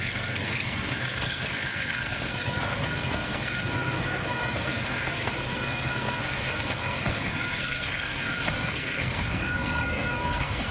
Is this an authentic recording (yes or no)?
no